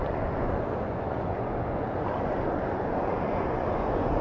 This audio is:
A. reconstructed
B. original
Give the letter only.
A